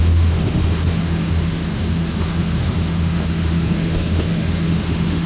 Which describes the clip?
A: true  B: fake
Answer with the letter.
B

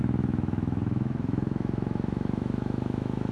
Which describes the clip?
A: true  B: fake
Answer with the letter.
B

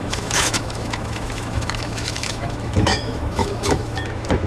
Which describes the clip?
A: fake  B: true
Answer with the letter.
A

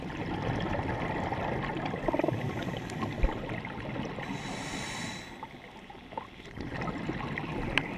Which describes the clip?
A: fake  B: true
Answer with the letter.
B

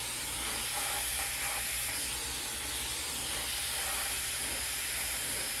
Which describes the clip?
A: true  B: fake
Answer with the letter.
A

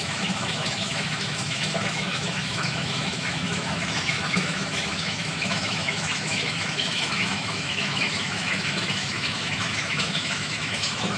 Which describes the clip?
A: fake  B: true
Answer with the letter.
A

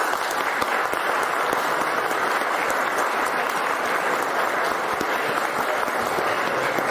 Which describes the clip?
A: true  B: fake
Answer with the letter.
A